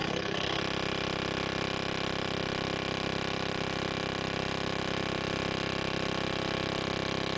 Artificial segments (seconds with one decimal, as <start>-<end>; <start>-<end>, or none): 0.0-0.6